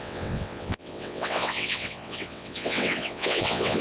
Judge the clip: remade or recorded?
remade